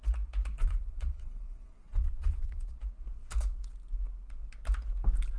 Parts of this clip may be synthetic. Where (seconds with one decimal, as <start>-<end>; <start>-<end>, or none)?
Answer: 0.6-2.7